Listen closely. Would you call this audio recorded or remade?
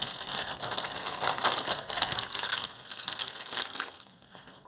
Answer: remade